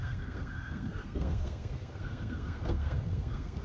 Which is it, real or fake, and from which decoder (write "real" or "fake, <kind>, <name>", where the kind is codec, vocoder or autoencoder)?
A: fake, codec, SNAC